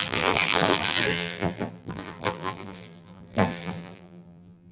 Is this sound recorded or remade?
remade